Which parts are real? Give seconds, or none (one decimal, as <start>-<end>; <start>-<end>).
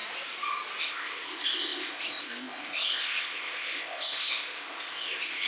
0.0-0.8